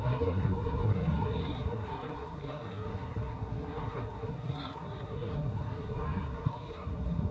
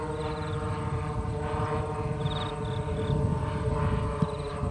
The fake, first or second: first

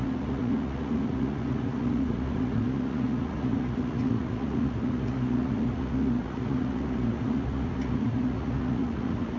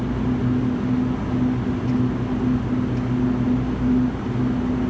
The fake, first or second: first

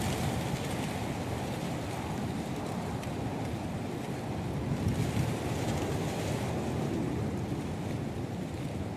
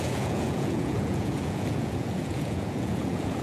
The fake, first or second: second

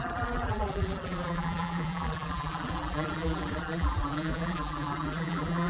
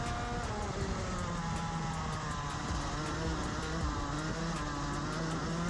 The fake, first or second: first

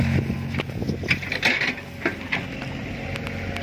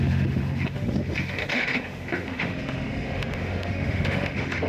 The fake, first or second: second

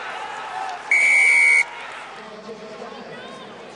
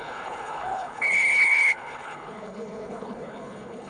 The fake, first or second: second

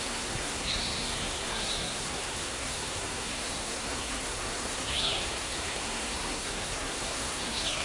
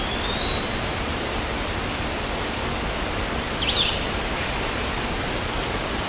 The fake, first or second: first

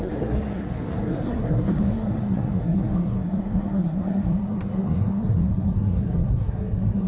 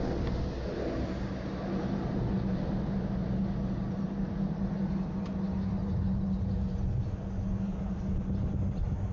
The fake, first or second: first